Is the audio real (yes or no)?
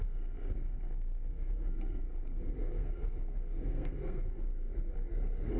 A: no